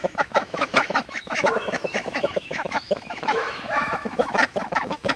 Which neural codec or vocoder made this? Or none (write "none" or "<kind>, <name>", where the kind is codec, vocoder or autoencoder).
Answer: autoencoder, DAC-VAE